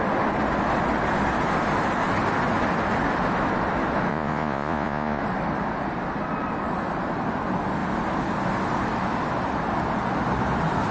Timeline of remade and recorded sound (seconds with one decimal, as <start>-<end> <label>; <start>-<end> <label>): 0.0-4.1 recorded; 4.1-5.2 remade; 5.2-10.9 recorded